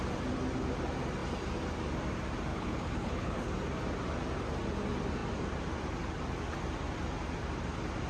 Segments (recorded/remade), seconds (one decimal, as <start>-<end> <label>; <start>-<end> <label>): 0.0-2.5 recorded; 2.5-3.5 remade; 3.5-8.1 recorded